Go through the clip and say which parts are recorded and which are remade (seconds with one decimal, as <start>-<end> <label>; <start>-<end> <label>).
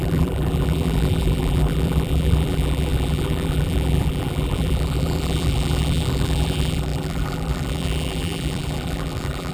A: 0.0-9.5 remade